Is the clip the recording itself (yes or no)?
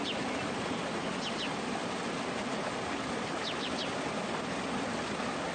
yes